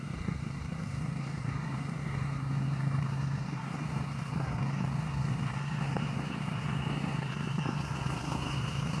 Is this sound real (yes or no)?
no